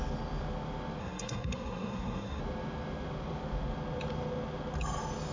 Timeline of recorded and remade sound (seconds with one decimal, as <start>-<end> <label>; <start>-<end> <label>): 0.0-1.0 recorded; 1.0-2.4 remade; 2.4-5.3 recorded